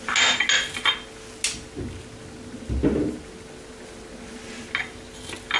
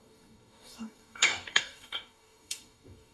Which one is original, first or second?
first